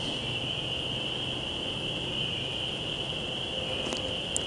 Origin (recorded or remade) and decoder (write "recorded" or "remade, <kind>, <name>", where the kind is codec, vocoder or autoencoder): recorded